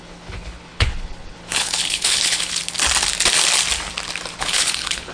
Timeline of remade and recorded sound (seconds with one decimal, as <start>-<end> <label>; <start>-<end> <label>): 0.0-2.6 remade; 2.6-4.4 recorded; 4.4-5.1 remade